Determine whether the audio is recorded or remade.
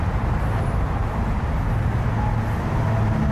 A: recorded